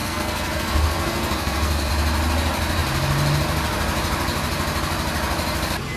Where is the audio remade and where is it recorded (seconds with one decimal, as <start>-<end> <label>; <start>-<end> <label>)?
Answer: 0.0-1.9 remade; 1.9-6.0 recorded